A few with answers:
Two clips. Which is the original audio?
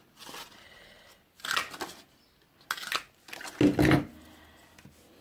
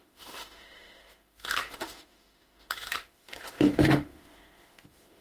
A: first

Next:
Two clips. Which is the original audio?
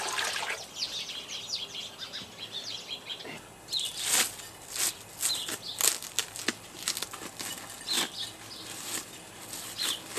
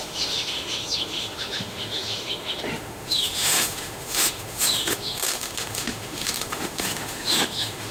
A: first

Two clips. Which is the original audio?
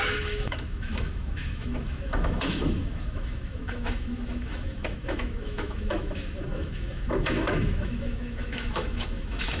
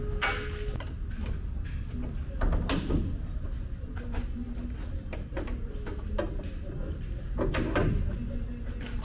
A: second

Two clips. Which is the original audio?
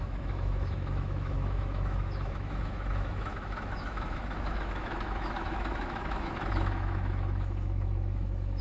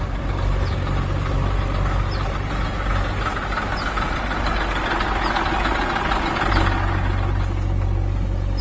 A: second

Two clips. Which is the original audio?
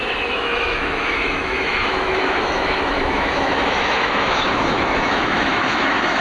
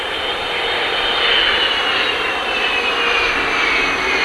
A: second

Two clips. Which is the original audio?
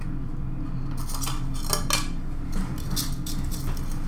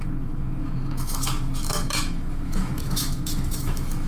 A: first